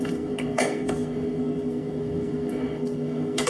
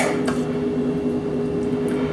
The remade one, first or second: first